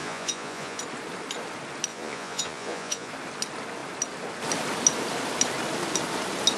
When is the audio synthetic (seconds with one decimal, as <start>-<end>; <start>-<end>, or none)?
0.0-0.8; 1.9-3.1